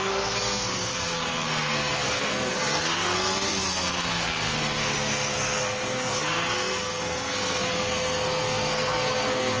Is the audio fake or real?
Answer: fake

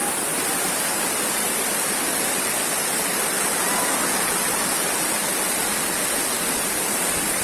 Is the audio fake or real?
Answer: real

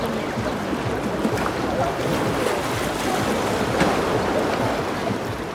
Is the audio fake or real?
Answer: real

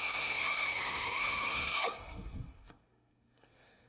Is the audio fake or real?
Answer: fake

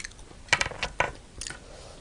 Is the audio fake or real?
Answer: real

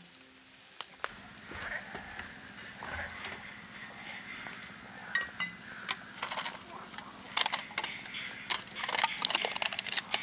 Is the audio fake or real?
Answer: real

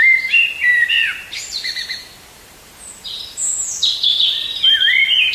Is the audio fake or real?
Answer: fake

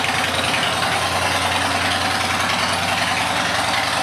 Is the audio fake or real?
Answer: real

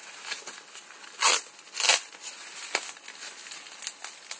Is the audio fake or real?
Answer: real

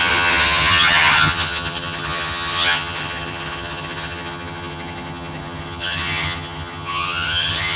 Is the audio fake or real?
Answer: fake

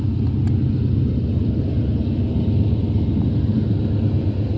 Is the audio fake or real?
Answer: real